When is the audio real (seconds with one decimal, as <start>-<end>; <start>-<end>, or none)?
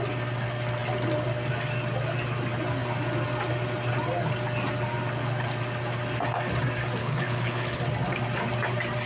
0.0-7.0; 7.8-9.1